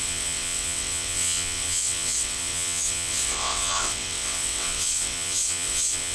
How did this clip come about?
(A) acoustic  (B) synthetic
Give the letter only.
B